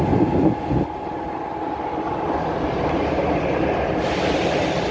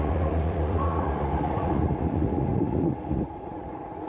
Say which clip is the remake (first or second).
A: second